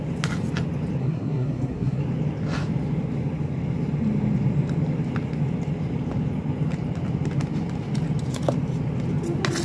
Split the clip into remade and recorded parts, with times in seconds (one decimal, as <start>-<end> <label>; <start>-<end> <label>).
0.0-1.0 recorded; 1.0-2.0 remade; 2.0-9.6 recorded